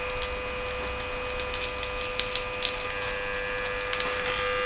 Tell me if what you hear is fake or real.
real